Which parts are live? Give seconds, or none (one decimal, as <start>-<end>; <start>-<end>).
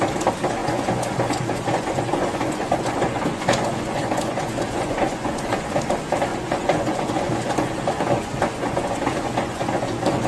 0.0-0.6; 5.8-6.3